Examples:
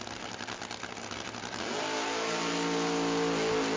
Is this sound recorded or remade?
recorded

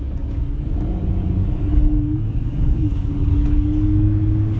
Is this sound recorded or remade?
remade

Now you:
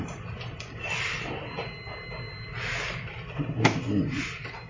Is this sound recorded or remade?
recorded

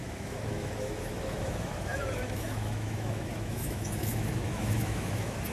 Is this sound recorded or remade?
remade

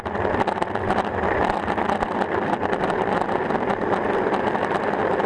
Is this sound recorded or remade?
recorded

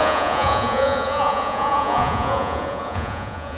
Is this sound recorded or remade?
remade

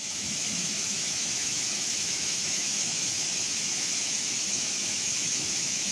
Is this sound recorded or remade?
remade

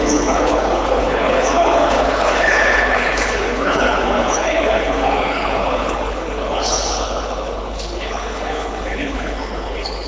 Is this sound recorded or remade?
remade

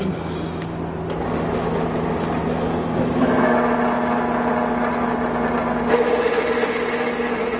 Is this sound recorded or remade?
recorded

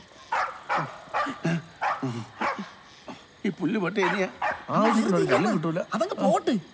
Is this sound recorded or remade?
recorded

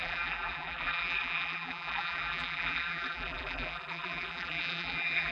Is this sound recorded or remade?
remade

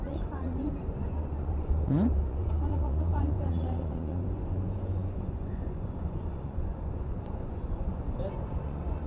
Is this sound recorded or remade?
remade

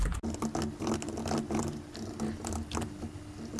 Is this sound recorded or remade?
recorded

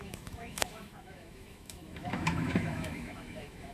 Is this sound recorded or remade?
remade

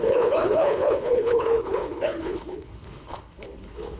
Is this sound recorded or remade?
remade